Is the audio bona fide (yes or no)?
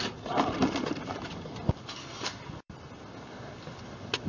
yes